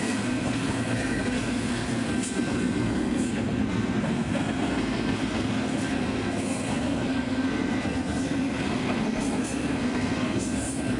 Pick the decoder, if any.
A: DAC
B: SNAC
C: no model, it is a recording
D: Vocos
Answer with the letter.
B